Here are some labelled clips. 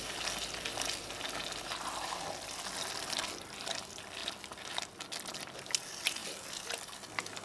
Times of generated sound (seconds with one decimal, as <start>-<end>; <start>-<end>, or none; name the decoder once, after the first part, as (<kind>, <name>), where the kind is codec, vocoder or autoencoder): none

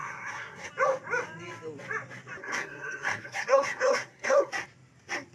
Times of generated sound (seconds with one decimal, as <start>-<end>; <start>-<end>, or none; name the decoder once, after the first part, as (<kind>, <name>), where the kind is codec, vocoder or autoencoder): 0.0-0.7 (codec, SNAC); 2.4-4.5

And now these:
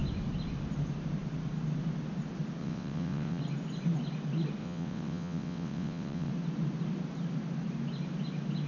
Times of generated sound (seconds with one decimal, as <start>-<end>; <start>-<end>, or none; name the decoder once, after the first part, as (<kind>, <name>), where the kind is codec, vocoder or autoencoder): 2.6-3.4 (vocoder, WaveNeXt); 4.6-6.3

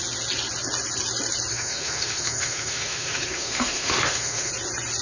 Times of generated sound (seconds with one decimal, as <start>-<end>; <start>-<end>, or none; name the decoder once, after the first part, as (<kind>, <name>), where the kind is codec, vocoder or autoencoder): 1.5-4.5 (autoencoder, DAC-VAE)

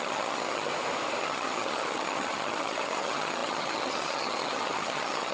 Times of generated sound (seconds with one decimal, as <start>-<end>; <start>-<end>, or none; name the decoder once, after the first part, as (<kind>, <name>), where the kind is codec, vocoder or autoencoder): 0.0-0.7 (vocoder, HiFi-GAN); 1.2-5.3